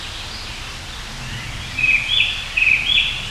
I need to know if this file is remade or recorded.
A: recorded